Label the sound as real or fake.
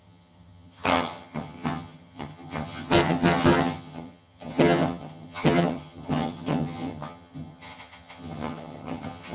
fake